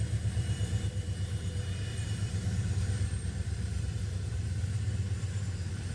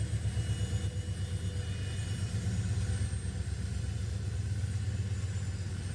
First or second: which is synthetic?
first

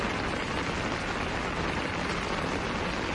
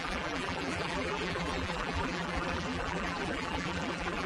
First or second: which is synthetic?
second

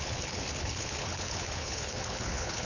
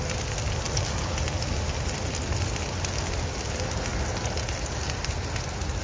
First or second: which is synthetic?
first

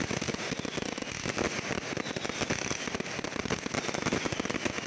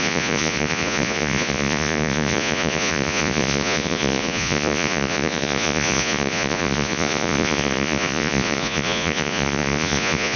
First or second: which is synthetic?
second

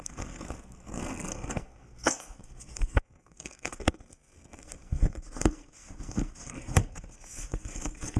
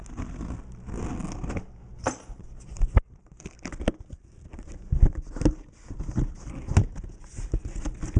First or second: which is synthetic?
first